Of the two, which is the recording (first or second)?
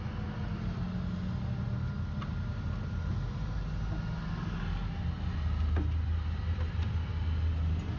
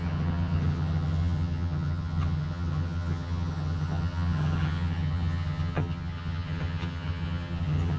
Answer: first